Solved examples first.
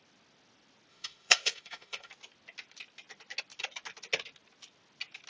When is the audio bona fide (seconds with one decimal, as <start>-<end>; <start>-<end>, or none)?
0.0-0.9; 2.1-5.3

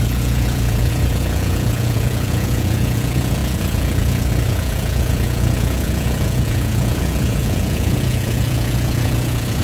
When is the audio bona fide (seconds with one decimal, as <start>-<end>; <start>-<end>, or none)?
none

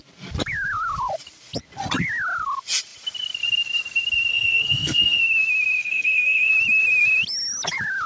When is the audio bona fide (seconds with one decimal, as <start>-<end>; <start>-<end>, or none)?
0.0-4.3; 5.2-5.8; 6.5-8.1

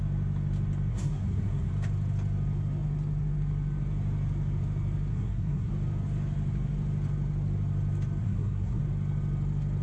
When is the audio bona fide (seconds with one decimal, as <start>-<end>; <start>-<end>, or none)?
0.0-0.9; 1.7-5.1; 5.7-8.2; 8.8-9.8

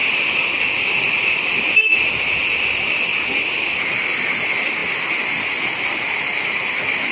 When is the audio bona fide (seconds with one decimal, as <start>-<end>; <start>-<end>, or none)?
0.0-7.1

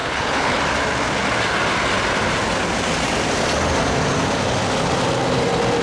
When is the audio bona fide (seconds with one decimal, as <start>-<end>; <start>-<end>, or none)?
0.6-5.8

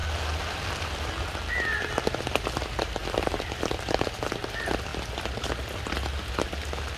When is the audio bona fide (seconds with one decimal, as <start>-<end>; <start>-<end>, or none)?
0.0-7.0

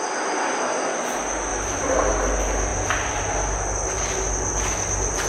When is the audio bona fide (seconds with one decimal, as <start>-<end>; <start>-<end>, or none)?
0.0-1.5; 2.1-5.3